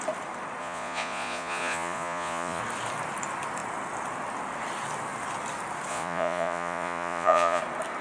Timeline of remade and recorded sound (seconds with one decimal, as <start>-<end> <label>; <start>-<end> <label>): 0.0-0.6 recorded; 0.6-2.6 remade; 2.6-5.9 recorded; 5.9-7.6 remade; 7.6-8.0 recorded